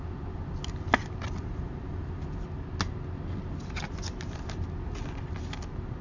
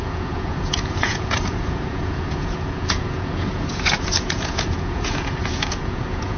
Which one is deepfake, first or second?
second